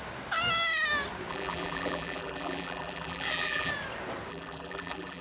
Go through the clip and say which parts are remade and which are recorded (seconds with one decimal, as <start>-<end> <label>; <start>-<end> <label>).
0.0-1.3 recorded; 1.3-3.7 remade; 3.7-4.3 recorded; 4.3-5.2 remade